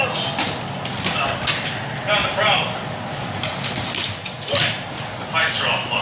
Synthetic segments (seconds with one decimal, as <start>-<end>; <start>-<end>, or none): none